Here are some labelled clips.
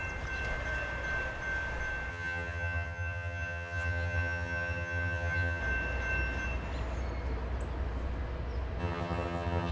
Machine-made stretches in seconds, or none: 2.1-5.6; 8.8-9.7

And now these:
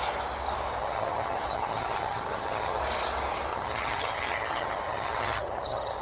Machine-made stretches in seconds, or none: 0.8-2.8; 3.5-6.0

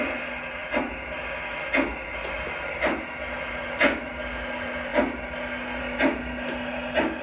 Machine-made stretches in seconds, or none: none

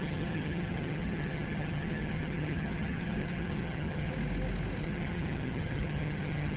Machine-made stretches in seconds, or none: 0.0-4.1; 4.8-6.6